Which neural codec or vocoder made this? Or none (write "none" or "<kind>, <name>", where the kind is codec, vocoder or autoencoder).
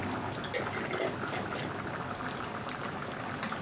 none